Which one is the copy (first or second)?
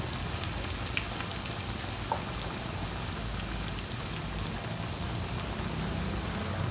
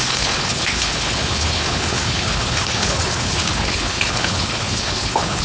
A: second